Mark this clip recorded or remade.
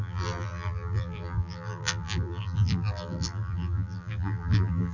remade